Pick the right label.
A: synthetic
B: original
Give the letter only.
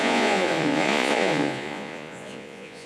A